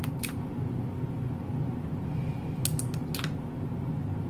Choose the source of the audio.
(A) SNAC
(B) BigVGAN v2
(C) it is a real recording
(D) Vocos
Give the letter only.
C